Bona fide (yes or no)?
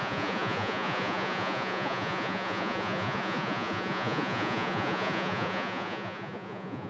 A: no